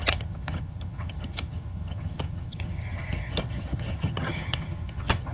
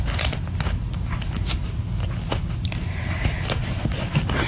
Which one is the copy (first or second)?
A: first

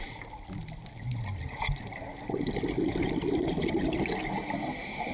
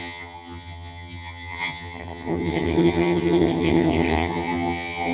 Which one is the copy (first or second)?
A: second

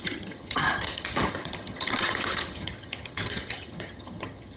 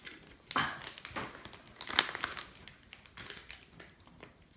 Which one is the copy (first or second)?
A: first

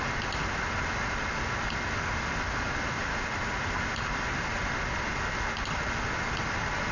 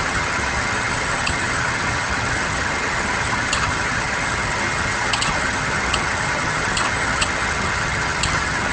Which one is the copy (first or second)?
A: second